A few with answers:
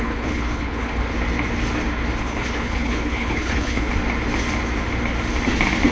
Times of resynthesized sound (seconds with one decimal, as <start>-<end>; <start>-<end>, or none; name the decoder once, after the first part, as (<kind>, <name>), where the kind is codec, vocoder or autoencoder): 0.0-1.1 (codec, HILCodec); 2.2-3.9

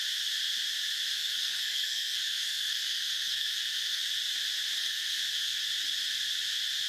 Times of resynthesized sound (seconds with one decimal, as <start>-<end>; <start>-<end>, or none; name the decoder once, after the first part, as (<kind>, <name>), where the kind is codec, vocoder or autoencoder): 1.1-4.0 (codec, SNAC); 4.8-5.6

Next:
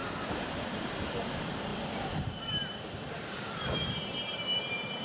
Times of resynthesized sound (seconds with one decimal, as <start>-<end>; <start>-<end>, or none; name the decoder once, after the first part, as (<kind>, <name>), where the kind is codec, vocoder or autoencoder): 0.0-5.0 (vocoder, BigVGAN v2)

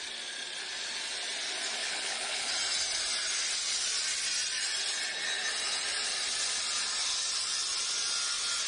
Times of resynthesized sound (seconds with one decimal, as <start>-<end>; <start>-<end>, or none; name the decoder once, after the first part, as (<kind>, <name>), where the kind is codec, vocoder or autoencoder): 1.8-2.5 (codec, HILCodec)

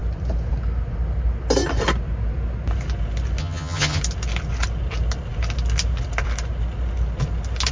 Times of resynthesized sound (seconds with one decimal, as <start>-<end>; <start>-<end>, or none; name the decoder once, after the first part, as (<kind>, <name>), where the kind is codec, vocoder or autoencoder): 3.4-4.0 (vocoder, HiFi-GAN)

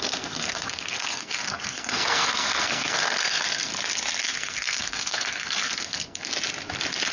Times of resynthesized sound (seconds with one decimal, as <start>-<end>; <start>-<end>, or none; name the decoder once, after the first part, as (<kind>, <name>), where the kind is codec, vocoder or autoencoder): 0.0-3.7 (codec, SNAC); 4.2-6.3